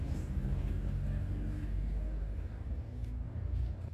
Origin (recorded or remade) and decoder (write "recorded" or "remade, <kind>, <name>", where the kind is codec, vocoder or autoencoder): remade, codec, DAC